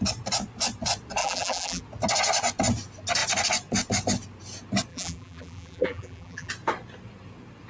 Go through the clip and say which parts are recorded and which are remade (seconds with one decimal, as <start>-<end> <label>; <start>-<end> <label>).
0.0-1.2 recorded; 1.2-1.8 remade; 1.8-4.9 recorded; 4.9-6.5 remade; 6.5-7.7 recorded